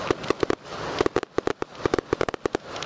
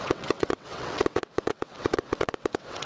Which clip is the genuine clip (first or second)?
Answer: first